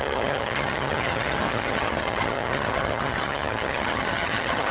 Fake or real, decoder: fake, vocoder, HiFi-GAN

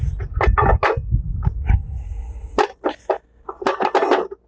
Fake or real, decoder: real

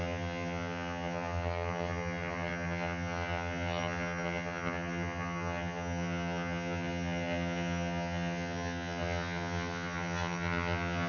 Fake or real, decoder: fake, vocoder, HiFi-GAN